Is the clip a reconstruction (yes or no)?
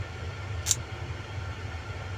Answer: no